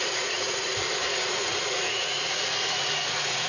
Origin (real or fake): fake